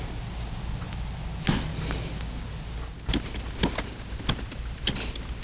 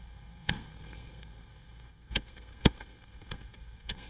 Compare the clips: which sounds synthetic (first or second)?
second